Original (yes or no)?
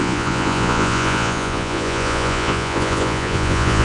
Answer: no